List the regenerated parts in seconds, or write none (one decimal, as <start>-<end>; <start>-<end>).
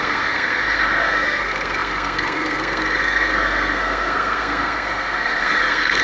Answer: 0.0-6.0